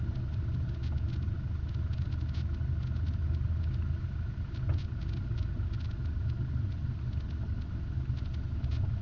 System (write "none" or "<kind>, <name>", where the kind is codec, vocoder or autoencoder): none